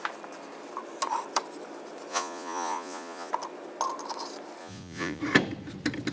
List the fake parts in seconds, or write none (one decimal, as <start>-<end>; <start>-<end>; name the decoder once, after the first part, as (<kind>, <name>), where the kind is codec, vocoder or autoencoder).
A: 2.1-3.3 (vocoder, Vocos); 4.6-5.2